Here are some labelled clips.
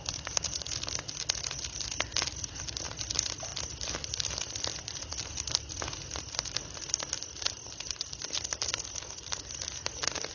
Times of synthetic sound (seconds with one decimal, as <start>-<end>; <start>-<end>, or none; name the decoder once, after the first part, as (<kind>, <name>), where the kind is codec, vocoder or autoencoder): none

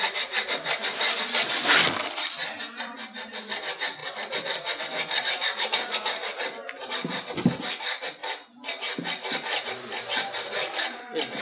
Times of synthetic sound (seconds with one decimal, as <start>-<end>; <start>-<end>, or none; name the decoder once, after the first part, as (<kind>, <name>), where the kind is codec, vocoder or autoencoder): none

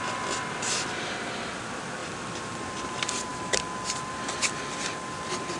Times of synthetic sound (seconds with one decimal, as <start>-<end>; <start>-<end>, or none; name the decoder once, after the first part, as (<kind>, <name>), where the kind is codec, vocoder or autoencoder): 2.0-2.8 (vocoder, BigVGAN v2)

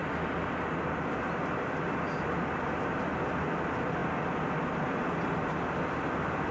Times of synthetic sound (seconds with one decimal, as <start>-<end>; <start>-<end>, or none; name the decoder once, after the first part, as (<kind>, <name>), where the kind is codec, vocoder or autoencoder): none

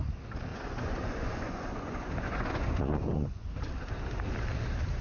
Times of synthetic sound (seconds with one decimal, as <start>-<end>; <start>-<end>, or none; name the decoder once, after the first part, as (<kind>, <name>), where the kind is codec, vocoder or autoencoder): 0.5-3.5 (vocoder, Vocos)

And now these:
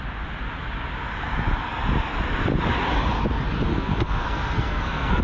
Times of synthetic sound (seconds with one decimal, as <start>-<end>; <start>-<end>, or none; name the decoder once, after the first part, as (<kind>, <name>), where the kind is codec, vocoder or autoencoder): 3.7-5.2 (codec, SNAC)

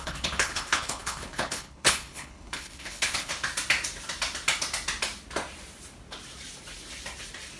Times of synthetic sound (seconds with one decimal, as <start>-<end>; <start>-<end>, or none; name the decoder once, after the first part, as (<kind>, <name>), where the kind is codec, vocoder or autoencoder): 0.0-3.3 (codec, HILCodec)